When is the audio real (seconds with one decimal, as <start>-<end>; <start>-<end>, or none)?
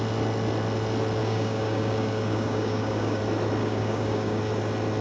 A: 0.0-1.2; 3.2-3.6; 4.4-5.0